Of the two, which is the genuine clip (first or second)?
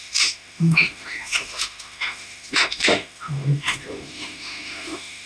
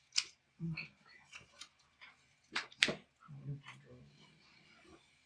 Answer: second